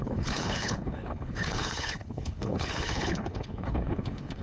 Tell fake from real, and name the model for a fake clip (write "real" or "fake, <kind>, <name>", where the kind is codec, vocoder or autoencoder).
fake, codec, HILCodec